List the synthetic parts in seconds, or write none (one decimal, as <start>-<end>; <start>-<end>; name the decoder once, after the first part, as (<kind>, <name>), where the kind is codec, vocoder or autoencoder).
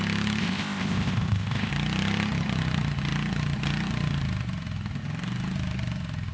0.4-1.7 (codec, ZipCodec)